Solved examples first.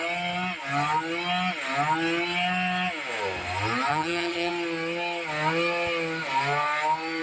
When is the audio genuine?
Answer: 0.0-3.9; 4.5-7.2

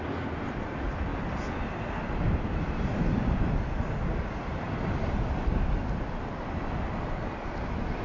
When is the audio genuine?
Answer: 0.0-8.0

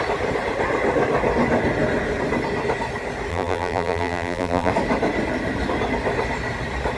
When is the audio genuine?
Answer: 0.0-3.3; 4.7-7.0

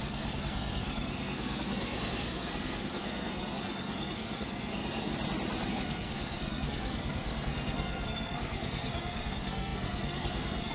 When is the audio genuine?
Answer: 5.1-5.7

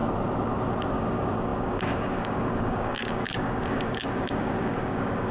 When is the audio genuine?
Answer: 0.0-0.9

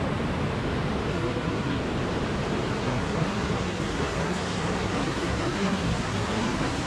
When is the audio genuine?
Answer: 0.0-1.1; 1.8-2.8

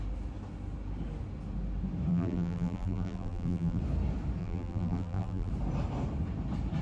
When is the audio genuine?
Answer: 0.0-2.1; 3.8-4.4; 5.5-6.8